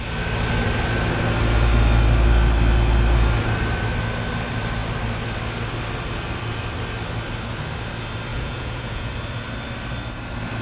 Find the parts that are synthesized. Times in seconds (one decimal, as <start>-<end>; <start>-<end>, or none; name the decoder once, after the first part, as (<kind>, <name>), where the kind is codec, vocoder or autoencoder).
8.3-9.1 (vocoder, Vocos)